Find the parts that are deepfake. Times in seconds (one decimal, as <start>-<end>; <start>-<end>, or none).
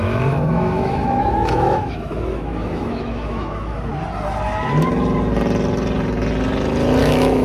0.0-3.9; 7.0-7.4